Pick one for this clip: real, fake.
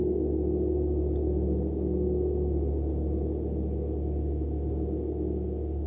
real